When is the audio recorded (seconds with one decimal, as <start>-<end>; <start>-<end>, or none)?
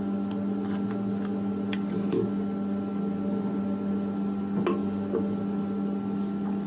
0.0-6.7